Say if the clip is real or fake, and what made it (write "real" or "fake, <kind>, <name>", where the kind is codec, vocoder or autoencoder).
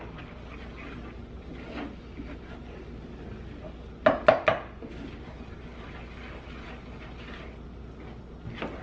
real